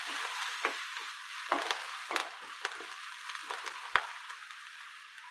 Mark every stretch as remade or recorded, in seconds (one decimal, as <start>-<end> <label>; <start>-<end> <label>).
0.0-5.3 recorded